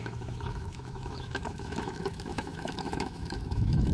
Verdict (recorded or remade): remade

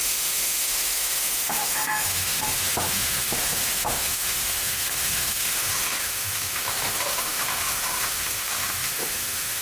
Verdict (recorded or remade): remade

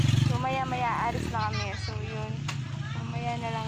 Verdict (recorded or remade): recorded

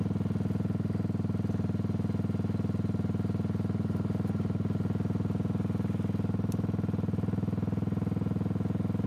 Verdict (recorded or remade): recorded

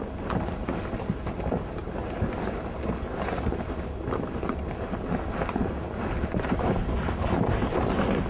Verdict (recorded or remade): recorded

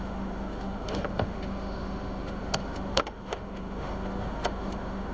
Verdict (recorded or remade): remade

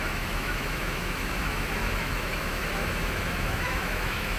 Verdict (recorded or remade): remade